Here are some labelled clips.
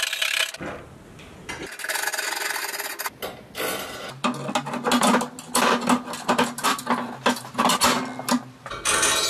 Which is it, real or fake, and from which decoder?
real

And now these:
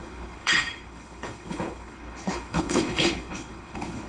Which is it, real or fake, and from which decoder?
fake, codec, HILCodec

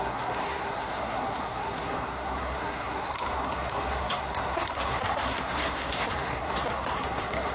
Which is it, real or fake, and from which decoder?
fake, codec, SNAC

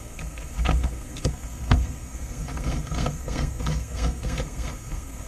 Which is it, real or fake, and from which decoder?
fake, codec, SNAC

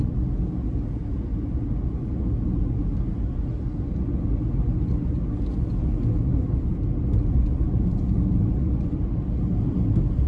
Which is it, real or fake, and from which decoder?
real